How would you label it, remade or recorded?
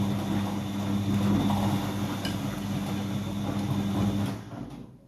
recorded